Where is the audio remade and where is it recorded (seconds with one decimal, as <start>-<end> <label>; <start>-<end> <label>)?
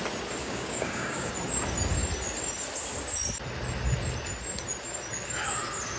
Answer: 0.0-0.4 recorded; 0.4-1.3 remade; 1.3-6.0 recorded